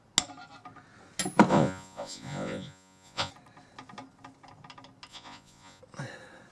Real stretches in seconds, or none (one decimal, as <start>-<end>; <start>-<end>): 0.0-1.5; 3.3-5.1; 5.8-6.5